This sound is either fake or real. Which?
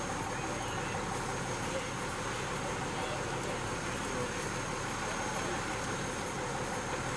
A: real